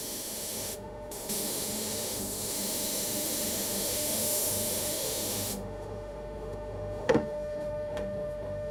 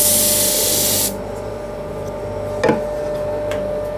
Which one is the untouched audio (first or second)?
second